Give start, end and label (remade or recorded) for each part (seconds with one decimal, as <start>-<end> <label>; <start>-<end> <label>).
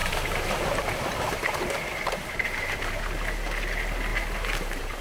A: 0.0-3.0 remade; 3.0-4.1 recorded; 4.1-5.0 remade